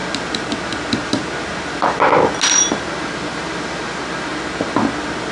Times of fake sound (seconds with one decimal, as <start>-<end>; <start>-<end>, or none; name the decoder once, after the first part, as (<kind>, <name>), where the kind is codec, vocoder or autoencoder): 2.6-4.3 (vocoder, BigVGAN v2)